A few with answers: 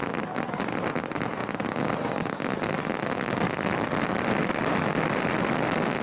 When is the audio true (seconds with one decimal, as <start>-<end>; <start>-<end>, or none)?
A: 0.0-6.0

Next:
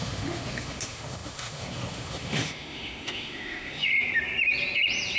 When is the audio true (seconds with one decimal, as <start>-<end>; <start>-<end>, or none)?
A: 3.9-5.2

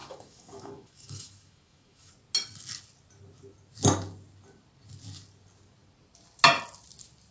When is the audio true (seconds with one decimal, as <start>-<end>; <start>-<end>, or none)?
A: 2.1-7.3

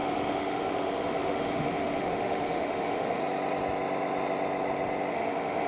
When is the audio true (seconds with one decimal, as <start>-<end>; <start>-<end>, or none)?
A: 3.2-5.1

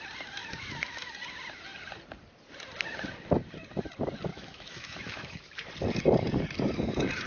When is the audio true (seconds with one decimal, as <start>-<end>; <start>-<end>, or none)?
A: 0.0-0.4; 1.1-4.3; 5.7-7.3

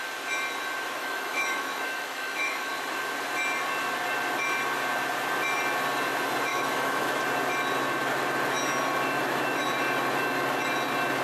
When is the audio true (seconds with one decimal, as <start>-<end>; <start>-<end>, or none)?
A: 0.0-1.0; 2.7-6.5; 7.2-11.2

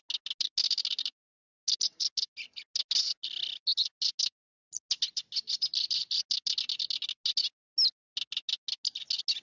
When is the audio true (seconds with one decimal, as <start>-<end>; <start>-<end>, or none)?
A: 0.0-9.4

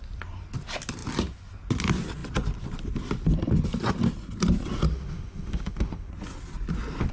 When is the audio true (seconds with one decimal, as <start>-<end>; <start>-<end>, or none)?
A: 0.0-4.9; 6.1-7.1